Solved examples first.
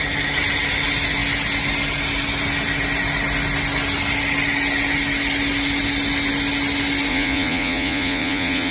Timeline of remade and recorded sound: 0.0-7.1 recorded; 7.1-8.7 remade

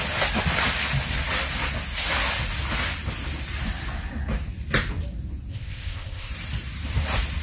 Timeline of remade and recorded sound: 0.0-5.5 recorded; 5.5-6.3 remade; 6.3-7.4 recorded

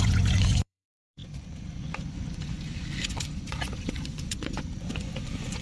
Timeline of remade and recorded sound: 0.0-5.6 remade

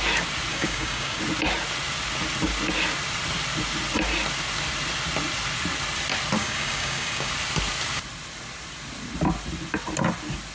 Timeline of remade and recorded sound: 0.0-0.5 recorded; 0.5-1.2 remade; 1.2-6.4 recorded; 6.4-7.3 remade; 7.3-10.5 recorded